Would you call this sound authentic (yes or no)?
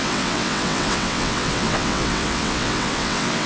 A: no